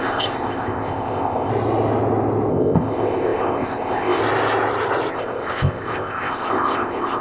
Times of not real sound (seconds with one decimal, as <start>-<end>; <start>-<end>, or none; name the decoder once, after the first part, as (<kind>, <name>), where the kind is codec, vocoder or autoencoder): 0.0-1.5 (codec, ZipCodec); 2.5-4.2; 5.1-7.2